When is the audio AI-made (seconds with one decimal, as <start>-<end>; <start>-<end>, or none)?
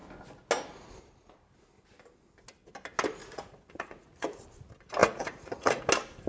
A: 3.2-4.4; 5.0-5.8